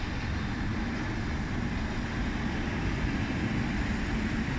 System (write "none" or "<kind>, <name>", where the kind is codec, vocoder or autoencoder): none